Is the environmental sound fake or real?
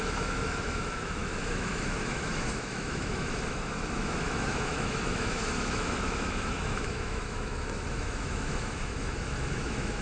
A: fake